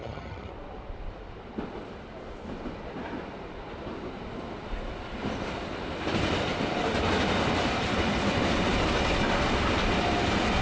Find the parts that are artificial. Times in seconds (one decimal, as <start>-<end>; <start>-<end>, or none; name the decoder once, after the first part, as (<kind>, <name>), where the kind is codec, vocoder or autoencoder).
0.0-0.5 (vocoder, HiFi-GAN)